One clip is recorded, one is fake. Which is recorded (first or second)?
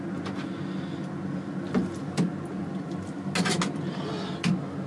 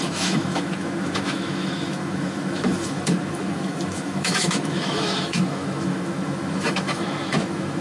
first